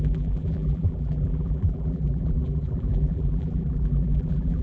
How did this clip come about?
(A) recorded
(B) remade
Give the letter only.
B